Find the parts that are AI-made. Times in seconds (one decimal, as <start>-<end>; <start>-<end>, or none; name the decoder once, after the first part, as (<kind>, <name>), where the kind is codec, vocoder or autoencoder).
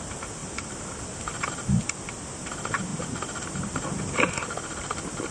none